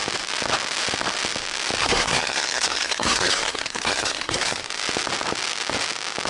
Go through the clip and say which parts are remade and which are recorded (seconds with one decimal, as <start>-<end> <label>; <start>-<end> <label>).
0.0-1.8 recorded; 1.8-4.6 remade; 4.6-6.3 recorded